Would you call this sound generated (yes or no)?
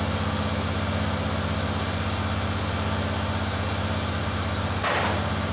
no